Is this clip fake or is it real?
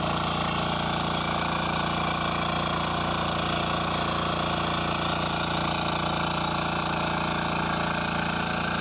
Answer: real